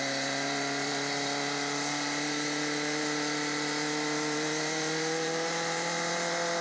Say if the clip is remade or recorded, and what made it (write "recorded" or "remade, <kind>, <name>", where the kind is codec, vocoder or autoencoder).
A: remade, vocoder, BigVGAN v2